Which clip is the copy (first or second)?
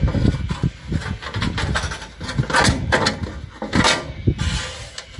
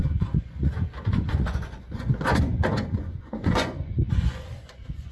second